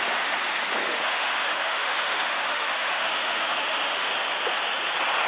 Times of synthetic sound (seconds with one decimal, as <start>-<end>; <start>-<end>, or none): 0.9-4.1